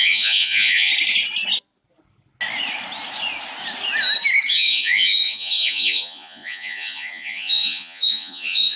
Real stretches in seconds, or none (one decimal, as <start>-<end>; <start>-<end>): 0.9-4.5